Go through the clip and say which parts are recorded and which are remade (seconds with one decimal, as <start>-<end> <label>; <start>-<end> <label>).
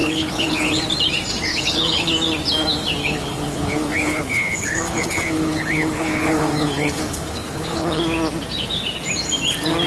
0.0-0.8 remade; 0.8-1.5 recorded; 1.5-2.1 remade; 2.1-3.0 recorded; 3.0-8.0 remade; 8.0-9.9 recorded